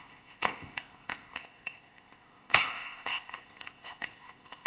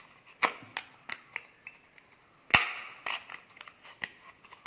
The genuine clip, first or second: second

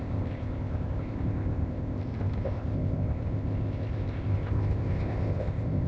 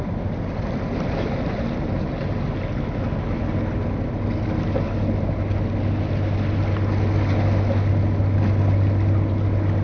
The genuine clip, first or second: second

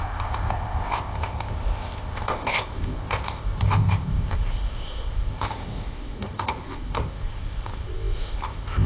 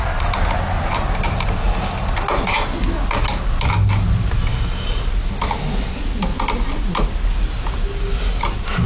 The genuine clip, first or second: second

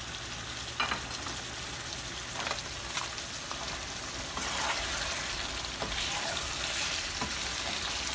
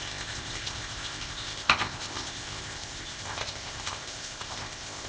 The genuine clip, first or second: first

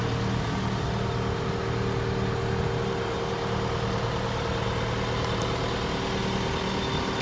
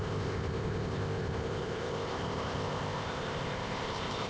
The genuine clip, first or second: first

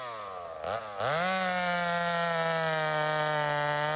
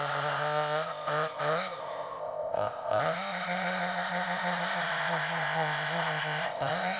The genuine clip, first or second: first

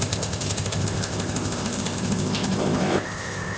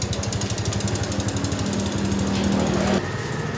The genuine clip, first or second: second